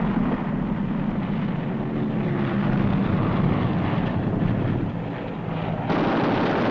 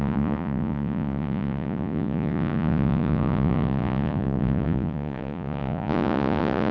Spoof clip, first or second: second